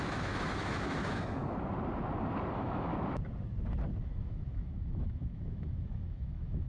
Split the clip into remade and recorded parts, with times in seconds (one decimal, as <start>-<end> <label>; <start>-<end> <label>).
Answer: 0.0-1.4 remade; 1.4-2.5 recorded; 2.5-2.9 remade; 2.9-4.0 recorded; 4.0-6.7 remade